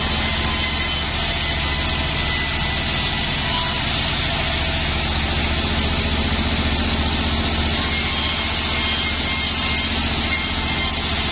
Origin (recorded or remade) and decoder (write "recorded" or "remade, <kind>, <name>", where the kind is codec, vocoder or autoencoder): recorded